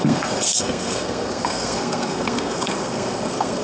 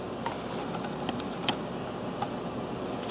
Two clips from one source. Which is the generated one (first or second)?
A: first